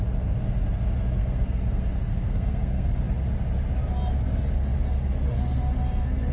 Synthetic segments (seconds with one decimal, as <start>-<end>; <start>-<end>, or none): 1.2-2.9

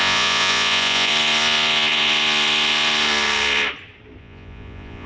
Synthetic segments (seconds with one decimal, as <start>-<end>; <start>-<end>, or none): 0.0-1.1; 4.2-5.1

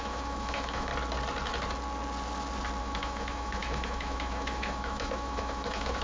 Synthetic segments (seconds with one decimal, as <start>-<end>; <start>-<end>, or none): 0.0-0.9; 2.8-6.0

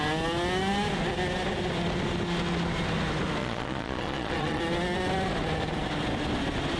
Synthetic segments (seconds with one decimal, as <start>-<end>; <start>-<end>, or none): 3.4-4.6

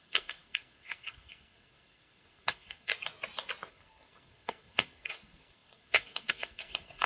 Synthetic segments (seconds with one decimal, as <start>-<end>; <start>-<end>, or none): 0.0-2.9; 3.7-7.1

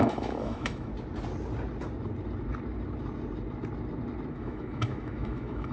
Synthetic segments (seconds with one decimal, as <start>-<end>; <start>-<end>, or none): 0.0-0.9; 4.3-5.7

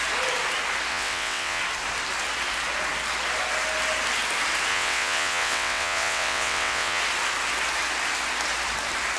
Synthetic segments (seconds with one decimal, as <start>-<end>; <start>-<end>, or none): 0.9-1.6; 4.7-7.0